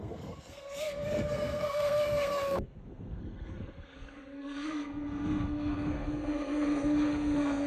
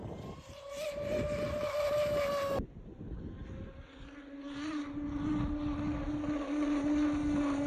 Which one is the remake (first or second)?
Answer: first